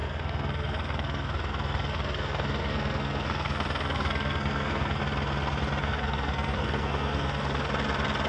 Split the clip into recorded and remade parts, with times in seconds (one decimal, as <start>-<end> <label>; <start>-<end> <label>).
0.0-5.0 remade; 5.0-5.8 recorded; 5.8-7.7 remade; 7.7-8.3 recorded